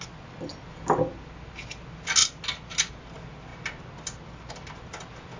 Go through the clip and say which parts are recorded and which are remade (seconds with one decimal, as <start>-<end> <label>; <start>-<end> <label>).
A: 0.0-5.4 recorded